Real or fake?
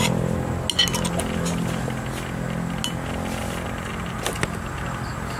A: real